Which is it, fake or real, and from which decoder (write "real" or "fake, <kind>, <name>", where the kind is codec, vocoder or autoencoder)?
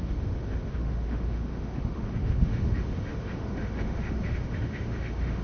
fake, autoencoder, DAC-VAE